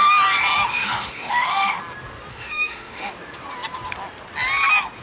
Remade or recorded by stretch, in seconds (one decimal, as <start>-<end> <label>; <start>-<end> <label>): 0.0-0.7 recorded; 0.7-1.8 remade; 1.8-2.3 recorded; 2.3-3.1 remade; 3.1-5.0 recorded